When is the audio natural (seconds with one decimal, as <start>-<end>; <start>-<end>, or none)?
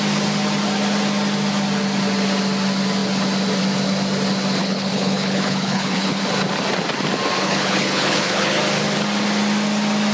0.0-4.6; 6.2-7.4; 8.6-10.1